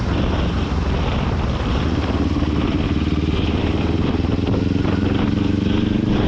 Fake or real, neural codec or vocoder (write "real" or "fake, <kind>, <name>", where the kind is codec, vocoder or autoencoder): fake, vocoder, BigVGAN v2